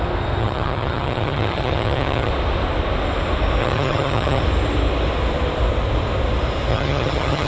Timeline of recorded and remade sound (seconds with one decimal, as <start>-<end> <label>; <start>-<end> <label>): 0.0-0.4 recorded; 0.4-2.3 remade; 2.3-3.6 recorded; 3.6-4.4 remade; 4.4-6.7 recorded; 6.7-7.5 remade